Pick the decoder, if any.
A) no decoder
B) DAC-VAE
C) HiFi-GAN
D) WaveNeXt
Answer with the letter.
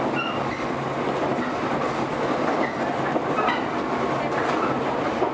A